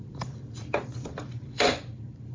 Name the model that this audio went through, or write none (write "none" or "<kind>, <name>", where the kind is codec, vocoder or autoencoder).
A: vocoder, BigVGAN v2